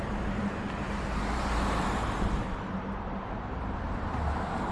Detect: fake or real fake